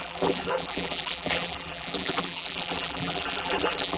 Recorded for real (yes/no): no